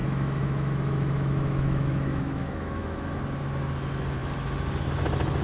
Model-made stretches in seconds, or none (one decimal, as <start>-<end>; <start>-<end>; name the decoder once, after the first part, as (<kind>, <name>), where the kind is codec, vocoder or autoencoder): 0.0-3.2 (autoencoder, DAC-VAE)